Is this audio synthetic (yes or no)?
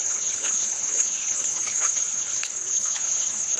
yes